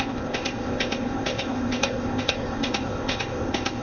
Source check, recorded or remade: remade